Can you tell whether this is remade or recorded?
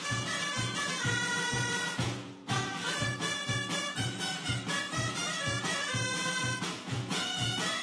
remade